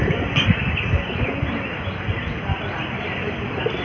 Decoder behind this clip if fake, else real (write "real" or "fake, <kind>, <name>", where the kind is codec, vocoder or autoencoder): fake, vocoder, BigVGAN v2